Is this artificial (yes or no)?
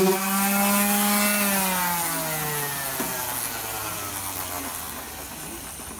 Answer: no